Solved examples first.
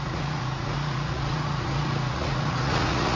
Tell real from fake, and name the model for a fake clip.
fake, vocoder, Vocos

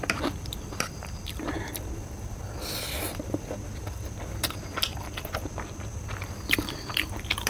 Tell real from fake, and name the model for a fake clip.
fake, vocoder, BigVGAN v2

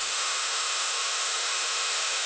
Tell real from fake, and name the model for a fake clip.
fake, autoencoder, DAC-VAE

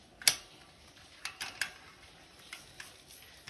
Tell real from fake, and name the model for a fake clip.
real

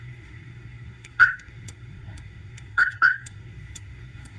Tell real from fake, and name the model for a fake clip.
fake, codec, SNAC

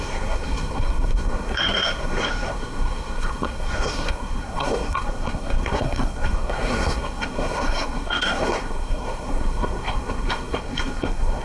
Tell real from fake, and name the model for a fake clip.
fake, codec, SNAC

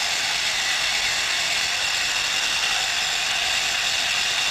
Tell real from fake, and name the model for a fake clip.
real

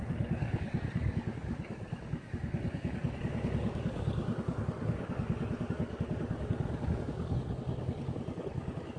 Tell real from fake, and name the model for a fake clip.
fake, codec, DAC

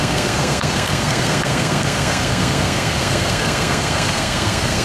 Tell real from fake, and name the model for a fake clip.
fake, codec, SNAC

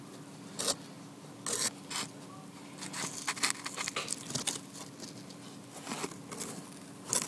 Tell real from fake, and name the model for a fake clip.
real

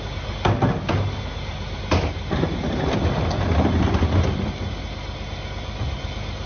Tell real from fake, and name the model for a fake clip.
real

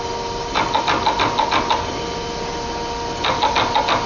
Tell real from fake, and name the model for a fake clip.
real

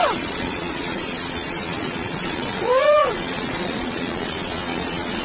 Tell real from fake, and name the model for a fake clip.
fake, vocoder, Vocos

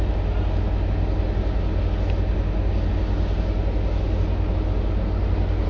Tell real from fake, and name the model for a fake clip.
real